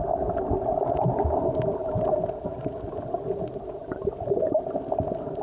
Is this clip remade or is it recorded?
recorded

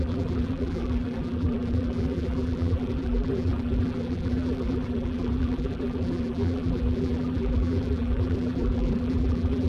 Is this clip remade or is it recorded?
remade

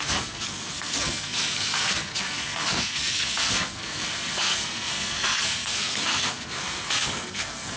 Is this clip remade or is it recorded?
remade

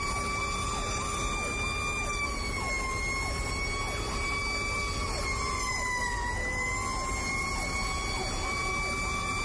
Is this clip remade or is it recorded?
recorded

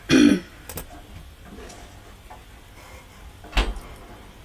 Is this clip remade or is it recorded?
recorded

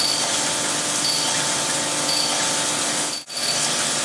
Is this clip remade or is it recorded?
recorded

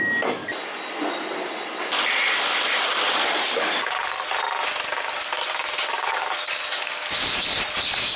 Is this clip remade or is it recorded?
recorded